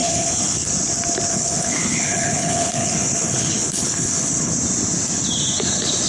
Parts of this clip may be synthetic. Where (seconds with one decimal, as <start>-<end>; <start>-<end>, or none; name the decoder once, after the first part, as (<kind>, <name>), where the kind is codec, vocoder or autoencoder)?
0.0-0.7 (codec, HILCodec); 1.3-4.5